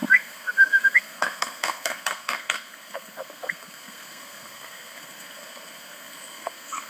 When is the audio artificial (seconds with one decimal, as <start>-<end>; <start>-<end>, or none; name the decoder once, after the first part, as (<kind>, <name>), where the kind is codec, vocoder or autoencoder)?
0.0-6.9 (codec, SNAC)